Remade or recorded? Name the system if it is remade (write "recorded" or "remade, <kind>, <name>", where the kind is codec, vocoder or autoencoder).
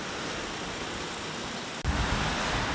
recorded